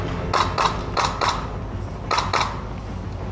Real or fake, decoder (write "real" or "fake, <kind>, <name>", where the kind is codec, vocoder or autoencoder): real